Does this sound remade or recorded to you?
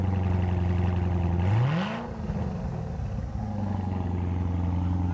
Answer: recorded